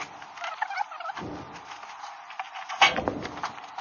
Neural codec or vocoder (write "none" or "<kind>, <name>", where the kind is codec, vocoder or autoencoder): none